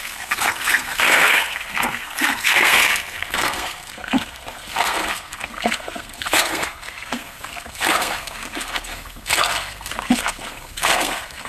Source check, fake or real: fake